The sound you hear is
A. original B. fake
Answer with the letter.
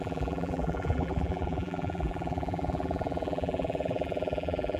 B